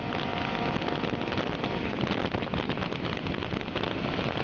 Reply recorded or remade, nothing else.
recorded